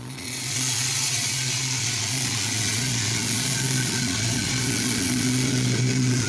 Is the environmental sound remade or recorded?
remade